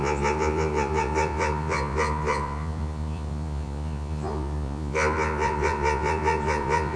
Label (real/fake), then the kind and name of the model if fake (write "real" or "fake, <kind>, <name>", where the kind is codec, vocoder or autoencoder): fake, vocoder, Vocos